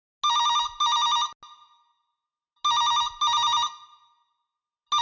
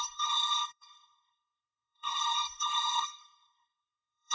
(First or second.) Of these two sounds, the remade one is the second